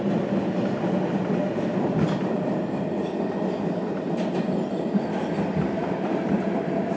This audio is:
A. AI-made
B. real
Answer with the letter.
B